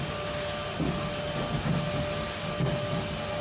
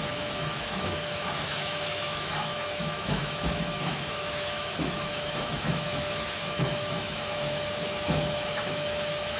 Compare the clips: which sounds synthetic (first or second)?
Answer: second